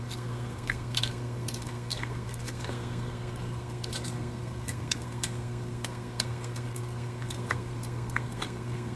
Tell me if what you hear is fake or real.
fake